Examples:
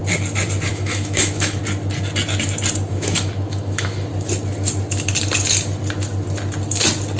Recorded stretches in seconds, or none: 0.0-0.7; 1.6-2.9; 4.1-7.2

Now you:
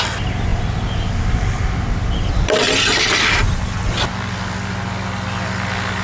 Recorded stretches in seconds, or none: 0.0-6.0

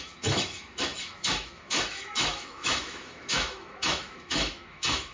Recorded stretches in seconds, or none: none

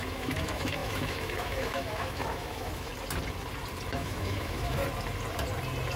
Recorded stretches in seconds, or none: 2.9-3.9; 4.8-6.0

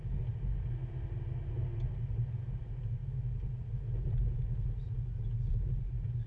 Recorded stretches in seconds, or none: 0.0-6.3

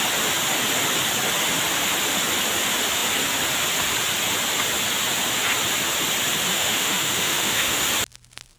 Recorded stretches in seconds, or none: 0.0-6.5; 7.8-8.6